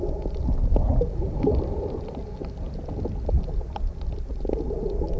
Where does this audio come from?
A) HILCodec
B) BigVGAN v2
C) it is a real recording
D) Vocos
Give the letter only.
C